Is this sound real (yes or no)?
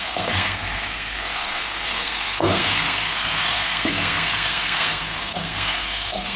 no